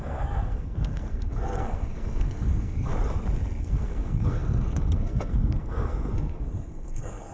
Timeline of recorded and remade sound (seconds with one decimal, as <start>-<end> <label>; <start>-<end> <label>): 0.0-2.9 remade; 2.9-3.6 recorded; 3.6-7.3 remade